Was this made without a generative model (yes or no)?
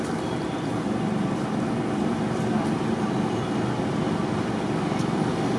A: yes